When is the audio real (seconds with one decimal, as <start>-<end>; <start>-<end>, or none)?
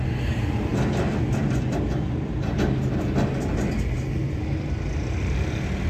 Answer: 0.0-5.9